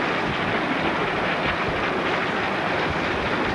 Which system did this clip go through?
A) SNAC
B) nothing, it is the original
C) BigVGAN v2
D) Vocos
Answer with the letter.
B